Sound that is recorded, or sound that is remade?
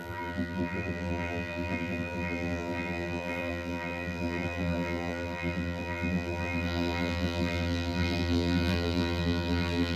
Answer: remade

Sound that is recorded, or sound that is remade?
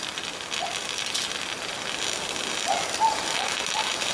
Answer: recorded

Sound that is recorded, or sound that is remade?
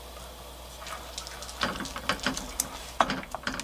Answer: recorded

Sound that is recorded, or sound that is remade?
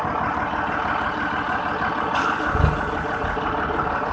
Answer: recorded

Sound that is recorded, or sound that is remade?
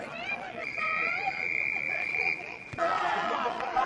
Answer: remade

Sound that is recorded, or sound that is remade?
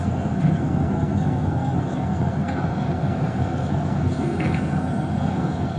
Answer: remade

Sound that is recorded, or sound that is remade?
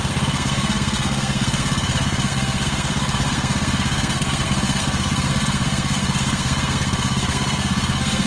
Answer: remade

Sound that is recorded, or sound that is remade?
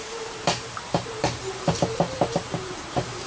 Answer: remade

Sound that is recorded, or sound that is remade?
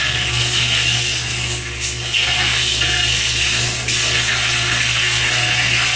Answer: remade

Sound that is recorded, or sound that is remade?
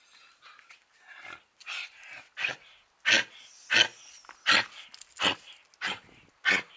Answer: recorded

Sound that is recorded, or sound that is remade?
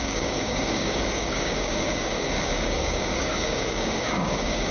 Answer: remade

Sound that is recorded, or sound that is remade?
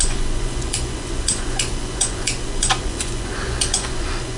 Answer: remade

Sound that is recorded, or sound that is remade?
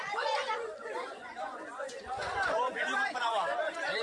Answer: remade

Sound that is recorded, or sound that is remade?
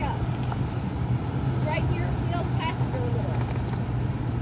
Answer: recorded